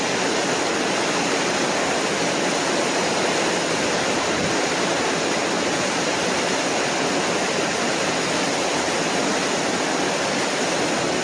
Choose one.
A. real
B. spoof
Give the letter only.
A